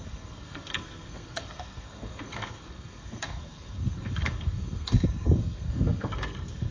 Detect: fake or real fake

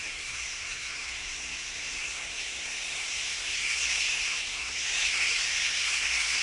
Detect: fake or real fake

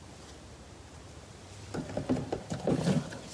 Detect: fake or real real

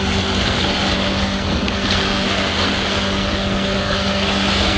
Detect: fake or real fake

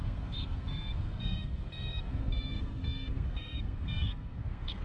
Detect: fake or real fake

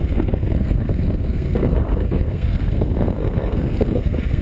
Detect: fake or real fake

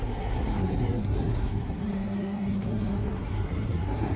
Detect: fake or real fake